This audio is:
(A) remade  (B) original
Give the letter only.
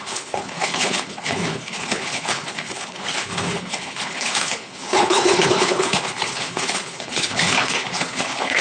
A